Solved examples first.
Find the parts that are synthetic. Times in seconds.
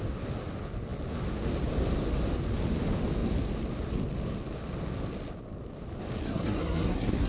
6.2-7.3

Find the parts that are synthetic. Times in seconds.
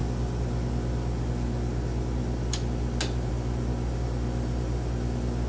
none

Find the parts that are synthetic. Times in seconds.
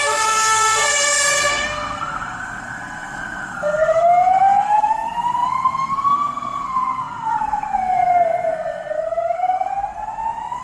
0.0-9.7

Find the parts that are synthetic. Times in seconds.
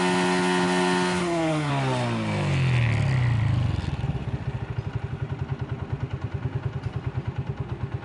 1.2-1.7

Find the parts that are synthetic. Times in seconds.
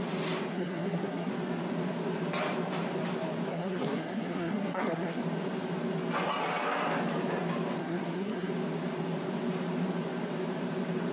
0.5-1.3; 3.5-5.2; 7.8-8.5